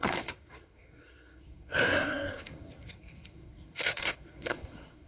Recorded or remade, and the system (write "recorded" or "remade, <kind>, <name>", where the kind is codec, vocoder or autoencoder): remade, codec, SNAC